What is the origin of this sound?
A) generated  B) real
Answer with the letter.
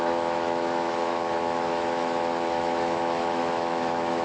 A